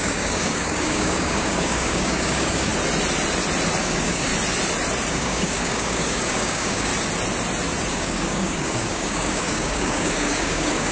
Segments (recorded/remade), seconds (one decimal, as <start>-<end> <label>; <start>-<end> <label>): 0.0-2.7 remade; 2.7-3.8 recorded; 3.8-4.3 remade; 4.3-5.1 recorded; 5.1-6.9 remade; 6.9-7.9 recorded; 7.9-10.9 remade